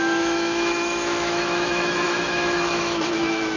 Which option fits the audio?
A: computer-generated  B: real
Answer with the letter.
A